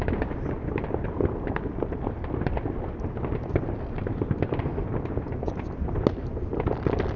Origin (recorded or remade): recorded